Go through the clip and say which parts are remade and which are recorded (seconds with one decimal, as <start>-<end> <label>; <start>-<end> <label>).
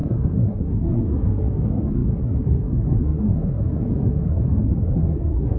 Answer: 0.0-5.6 remade